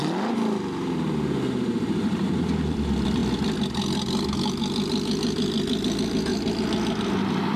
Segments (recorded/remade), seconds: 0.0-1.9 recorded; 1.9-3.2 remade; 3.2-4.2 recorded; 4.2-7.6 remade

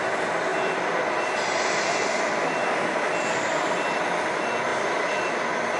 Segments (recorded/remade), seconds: 0.0-5.8 recorded